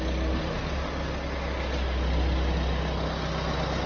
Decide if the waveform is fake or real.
real